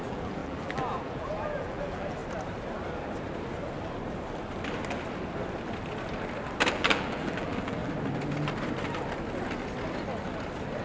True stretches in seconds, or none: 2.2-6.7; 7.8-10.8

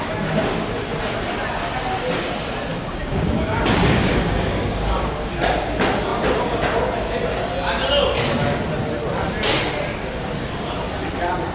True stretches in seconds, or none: 0.0-2.7; 5.3-11.5